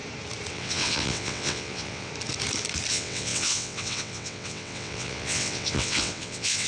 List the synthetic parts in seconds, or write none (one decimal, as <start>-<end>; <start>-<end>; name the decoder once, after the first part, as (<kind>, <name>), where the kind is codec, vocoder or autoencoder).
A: 0.5-2.1 (vocoder, WaveNeXt); 2.9-6.7